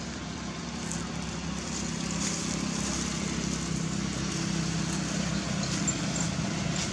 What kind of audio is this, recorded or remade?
recorded